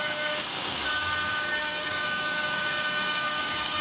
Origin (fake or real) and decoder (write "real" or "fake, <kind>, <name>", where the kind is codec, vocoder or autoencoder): fake, codec, DAC